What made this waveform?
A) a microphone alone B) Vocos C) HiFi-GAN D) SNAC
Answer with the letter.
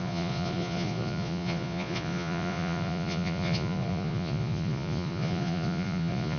B